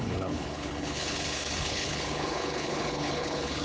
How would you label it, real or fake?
fake